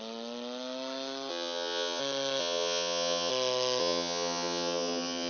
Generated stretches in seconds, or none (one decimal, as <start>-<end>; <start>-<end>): 1.3-2.0; 2.4-3.3; 3.8-5.3